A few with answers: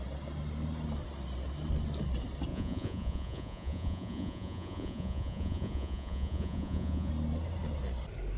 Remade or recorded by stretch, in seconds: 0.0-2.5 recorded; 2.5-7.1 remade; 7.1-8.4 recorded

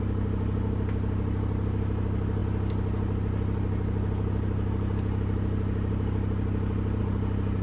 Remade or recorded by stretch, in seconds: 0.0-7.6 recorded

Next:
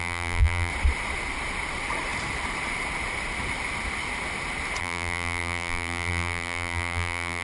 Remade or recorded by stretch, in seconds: 0.0-0.7 remade; 0.7-4.8 recorded; 4.8-7.4 remade

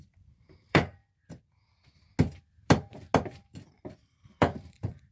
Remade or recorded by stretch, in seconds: 0.0-1.0 remade; 1.0-4.1 recorded; 4.1-5.1 remade

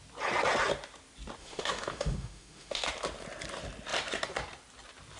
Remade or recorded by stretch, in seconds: 0.0-1.4 recorded; 1.4-2.9 remade; 2.9-5.2 recorded

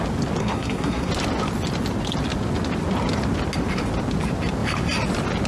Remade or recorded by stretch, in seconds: 0.0-0.4 recorded; 0.4-1.1 remade; 1.1-5.5 recorded

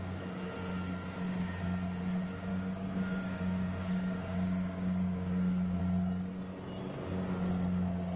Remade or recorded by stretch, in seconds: 0.0-2.5 recorded; 2.5-5.8 remade; 5.8-8.2 recorded